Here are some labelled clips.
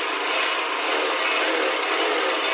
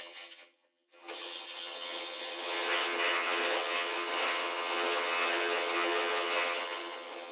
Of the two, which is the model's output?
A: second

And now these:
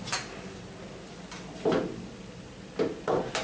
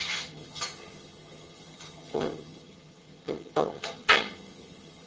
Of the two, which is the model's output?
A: second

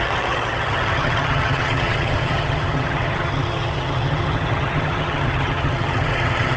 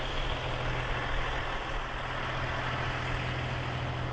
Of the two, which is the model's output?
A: first